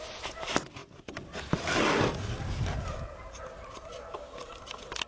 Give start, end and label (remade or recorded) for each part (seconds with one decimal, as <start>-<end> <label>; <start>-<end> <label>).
0.0-5.1 recorded